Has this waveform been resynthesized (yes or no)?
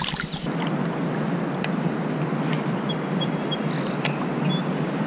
no